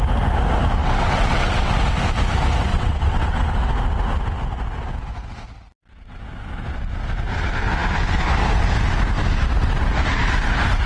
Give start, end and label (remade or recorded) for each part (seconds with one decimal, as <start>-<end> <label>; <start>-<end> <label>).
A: 0.0-0.8 recorded; 0.8-1.7 remade; 1.7-2.7 recorded; 2.7-3.5 remade; 3.5-10.9 recorded